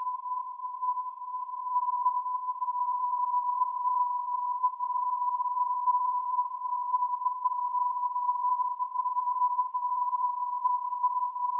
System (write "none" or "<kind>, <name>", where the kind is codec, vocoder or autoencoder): codec, SNAC